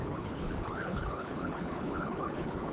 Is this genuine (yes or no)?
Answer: no